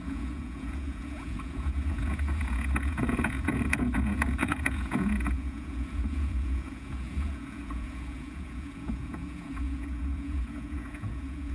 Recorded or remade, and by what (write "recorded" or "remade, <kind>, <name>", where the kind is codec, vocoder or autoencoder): remade, vocoder, Vocos